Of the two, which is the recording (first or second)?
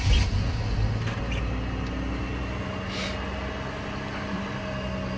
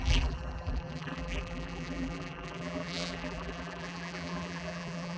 first